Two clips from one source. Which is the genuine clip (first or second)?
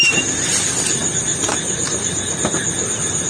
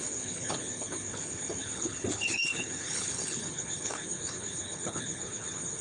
first